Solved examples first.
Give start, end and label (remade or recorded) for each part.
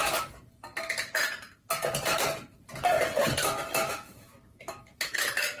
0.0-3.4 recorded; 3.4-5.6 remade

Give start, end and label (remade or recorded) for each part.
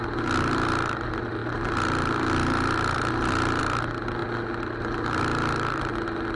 0.0-6.4 recorded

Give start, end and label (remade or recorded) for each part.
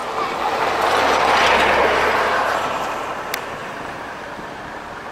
0.0-3.6 recorded; 3.6-4.2 remade; 4.2-5.1 recorded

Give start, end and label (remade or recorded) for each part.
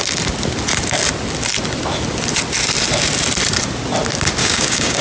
0.0-4.4 recorded; 4.4-5.0 remade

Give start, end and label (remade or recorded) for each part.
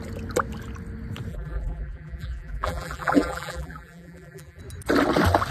0.0-1.3 recorded; 1.3-4.6 remade; 4.6-5.5 recorded